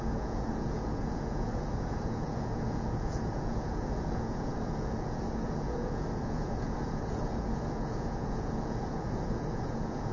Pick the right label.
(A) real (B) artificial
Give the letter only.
B